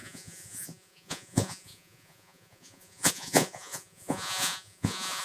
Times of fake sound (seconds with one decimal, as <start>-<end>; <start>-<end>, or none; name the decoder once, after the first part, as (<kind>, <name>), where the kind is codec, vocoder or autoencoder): 0.0-5.2 (vocoder, Vocos)